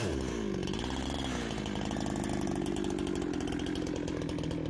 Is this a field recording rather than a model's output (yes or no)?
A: yes